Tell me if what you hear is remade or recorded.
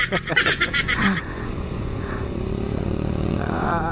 remade